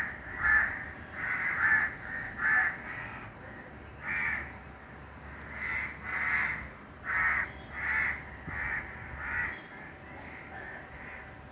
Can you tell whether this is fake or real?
real